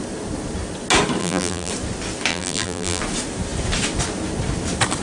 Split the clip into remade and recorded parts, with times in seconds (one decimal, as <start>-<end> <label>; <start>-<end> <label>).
0.0-1.2 recorded; 1.2-1.7 remade; 1.7-2.3 recorded; 2.3-3.0 remade; 3.0-5.0 recorded